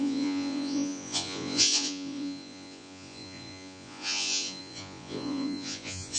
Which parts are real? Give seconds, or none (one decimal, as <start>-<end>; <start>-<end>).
none

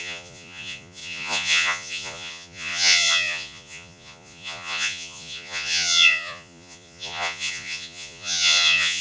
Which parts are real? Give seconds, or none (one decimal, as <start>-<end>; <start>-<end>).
none

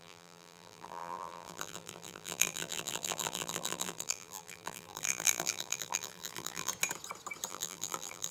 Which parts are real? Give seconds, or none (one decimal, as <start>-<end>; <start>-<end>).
6.7-7.5

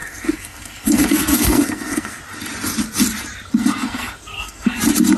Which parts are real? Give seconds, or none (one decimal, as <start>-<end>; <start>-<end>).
2.2-3.6; 4.8-5.2

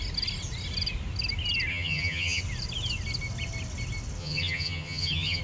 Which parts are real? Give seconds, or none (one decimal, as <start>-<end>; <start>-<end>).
0.0-1.7; 2.4-4.2

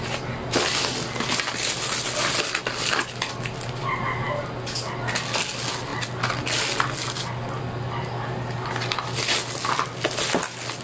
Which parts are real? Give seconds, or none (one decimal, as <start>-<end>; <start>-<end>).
0.0-10.8